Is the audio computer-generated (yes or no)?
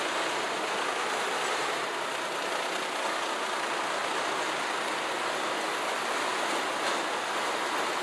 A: no